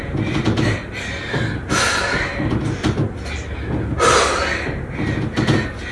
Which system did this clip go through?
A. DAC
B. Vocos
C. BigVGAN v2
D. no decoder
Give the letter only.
D